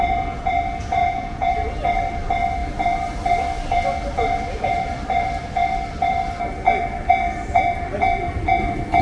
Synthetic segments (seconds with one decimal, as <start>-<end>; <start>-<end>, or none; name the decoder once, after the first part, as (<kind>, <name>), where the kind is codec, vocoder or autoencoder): 1.0-1.5 (vocoder, Vocos)